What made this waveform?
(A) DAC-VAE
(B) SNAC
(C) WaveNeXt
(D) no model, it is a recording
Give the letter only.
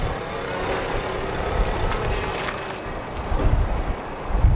D